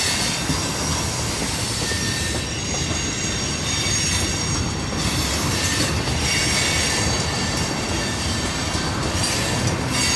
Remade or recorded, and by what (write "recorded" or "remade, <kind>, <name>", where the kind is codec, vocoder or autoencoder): recorded